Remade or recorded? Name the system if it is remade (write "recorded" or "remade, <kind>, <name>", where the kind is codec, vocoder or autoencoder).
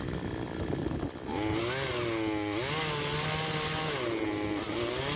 recorded